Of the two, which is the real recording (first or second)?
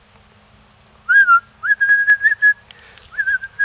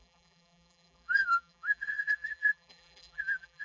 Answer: first